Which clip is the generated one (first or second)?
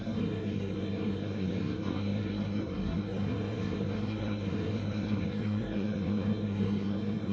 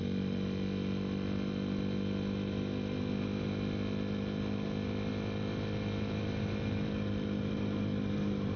first